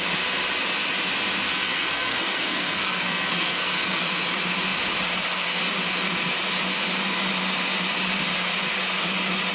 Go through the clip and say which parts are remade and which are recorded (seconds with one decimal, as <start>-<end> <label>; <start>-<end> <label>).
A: 0.0-1.5 recorded; 1.5-4.0 remade; 4.0-9.5 recorded